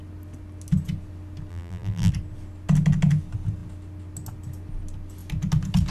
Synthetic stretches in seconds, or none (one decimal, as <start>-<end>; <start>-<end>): 1.5-2.1